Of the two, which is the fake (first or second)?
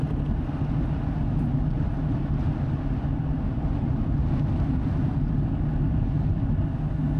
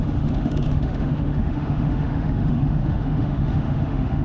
second